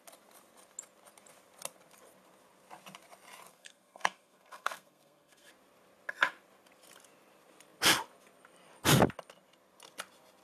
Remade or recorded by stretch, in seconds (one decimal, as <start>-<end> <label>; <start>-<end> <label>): 0.0-3.5 recorded; 3.5-5.5 remade; 5.5-10.4 recorded